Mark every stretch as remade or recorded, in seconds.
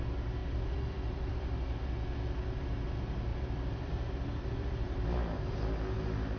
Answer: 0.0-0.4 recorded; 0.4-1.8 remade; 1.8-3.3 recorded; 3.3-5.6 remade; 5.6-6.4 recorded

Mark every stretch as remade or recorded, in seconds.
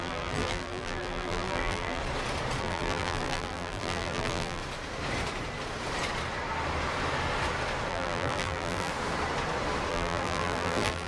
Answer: 0.0-2.0 remade; 2.0-2.6 recorded; 2.6-4.6 remade; 4.6-7.9 recorded; 7.9-8.9 remade; 8.9-9.9 recorded; 9.9-11.1 remade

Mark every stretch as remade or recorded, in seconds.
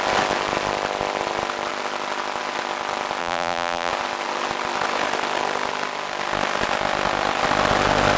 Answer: 0.0-3.2 recorded; 3.2-3.9 remade; 3.9-8.2 recorded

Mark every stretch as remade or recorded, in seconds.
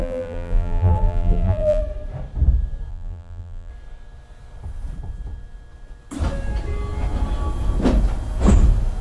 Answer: 0.0-1.8 remade; 1.8-2.9 recorded; 2.9-3.7 remade; 3.7-9.0 recorded